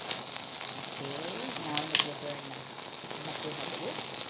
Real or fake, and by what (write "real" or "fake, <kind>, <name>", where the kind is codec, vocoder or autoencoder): real